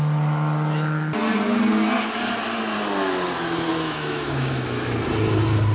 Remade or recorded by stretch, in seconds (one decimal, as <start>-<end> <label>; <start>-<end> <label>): 0.0-3.7 recorded; 3.7-5.0 remade; 5.0-5.7 recorded